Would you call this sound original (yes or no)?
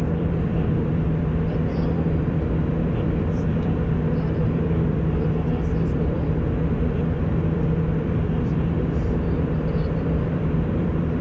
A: no